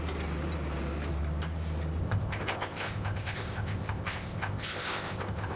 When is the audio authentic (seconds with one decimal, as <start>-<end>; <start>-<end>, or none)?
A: 0.0-2.0